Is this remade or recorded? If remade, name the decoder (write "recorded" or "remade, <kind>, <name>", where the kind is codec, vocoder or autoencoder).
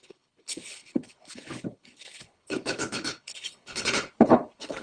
remade, codec, HILCodec